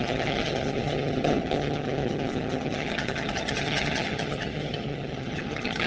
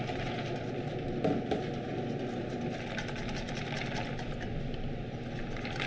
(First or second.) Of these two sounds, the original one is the second